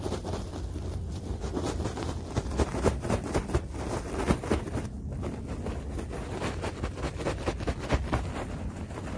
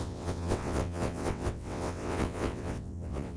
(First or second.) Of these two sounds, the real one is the first